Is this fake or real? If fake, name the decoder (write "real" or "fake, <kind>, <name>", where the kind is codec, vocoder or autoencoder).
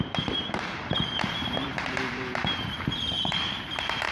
fake, vocoder, BigVGAN v2